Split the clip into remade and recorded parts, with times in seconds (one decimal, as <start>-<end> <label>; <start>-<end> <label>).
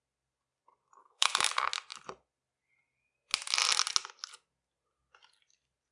0.0-1.0 recorded; 1.0-1.5 remade; 1.5-5.9 recorded